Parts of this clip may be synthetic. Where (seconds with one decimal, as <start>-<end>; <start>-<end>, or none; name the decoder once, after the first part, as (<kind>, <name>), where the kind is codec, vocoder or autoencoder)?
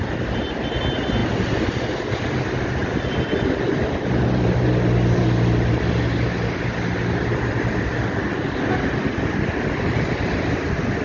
2.8-6.0 (vocoder, BigVGAN v2)